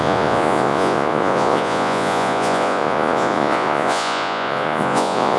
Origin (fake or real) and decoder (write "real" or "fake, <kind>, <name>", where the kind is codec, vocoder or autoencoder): fake, vocoder, Vocos